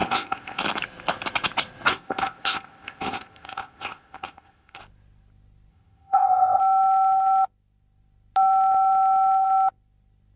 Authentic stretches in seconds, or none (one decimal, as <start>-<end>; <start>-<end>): 0.6-1.9; 4.8-5.7; 6.6-10.4